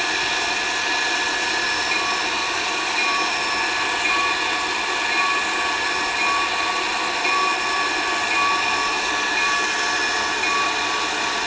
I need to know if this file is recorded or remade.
recorded